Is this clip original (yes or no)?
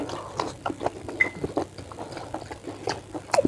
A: yes